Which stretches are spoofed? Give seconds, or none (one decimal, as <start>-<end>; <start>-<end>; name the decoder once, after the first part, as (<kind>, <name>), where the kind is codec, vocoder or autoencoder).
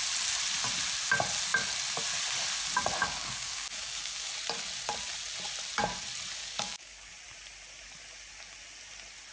3.0-4.3 (codec, DAC); 6.4-7.1